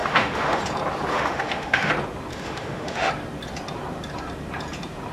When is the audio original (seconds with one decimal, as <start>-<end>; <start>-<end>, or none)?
0.6-1.1; 1.9-2.3; 3.1-5.1